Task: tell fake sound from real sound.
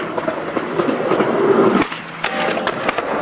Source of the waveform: real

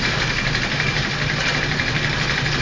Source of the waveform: real